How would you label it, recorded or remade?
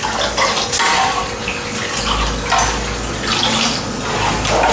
recorded